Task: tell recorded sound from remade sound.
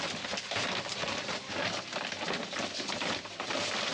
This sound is remade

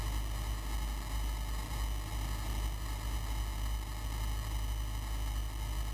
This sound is recorded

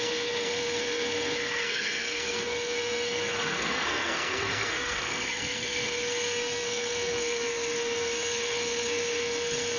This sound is remade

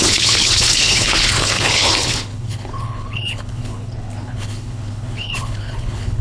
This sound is remade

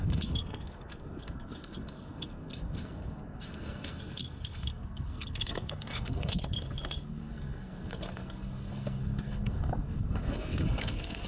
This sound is remade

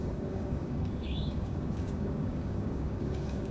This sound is remade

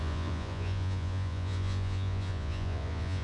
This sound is remade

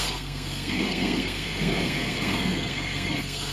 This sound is remade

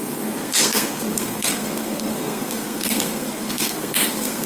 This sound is remade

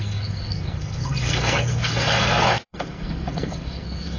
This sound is remade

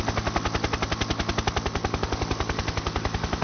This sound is recorded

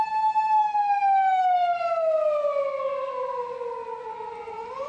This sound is recorded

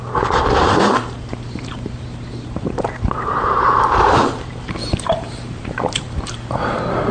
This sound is remade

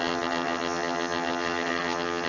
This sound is remade